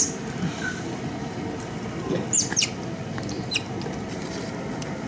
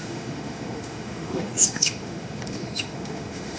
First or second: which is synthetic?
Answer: second